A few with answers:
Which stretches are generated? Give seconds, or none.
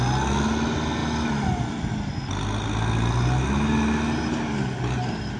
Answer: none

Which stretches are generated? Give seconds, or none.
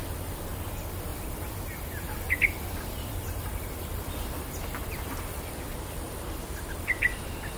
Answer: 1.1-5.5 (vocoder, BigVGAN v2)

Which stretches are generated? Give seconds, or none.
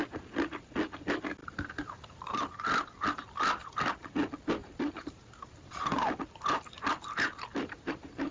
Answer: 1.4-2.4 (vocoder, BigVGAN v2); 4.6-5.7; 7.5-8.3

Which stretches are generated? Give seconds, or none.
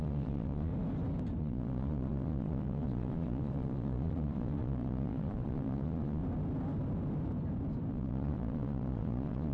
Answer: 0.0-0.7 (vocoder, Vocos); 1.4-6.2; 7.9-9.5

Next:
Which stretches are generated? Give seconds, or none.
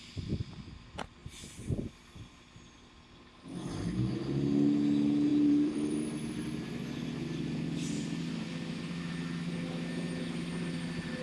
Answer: 5.3-6.7 (vocoder, BigVGAN v2)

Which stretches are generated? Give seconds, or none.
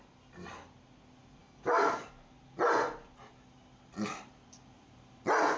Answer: 1.4-1.9 (codec, DAC)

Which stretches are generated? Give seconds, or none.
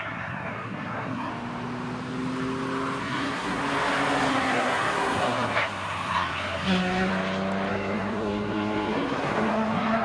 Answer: 0.0-1.3 (codec, SNAC); 3.0-3.6; 4.3-7.1; 7.7-10.0